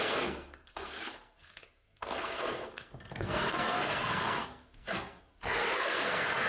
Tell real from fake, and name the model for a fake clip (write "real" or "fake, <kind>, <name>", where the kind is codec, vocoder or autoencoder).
fake, codec, SNAC